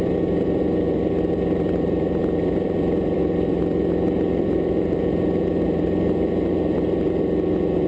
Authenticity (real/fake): fake